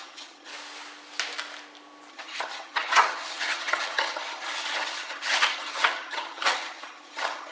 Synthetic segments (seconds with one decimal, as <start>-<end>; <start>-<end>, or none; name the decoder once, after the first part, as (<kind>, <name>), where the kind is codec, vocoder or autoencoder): 0.0-0.5 (vocoder, HiFi-GAN); 2.1-7.5